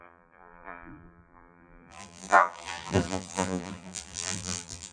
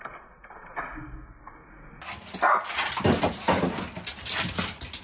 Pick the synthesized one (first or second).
first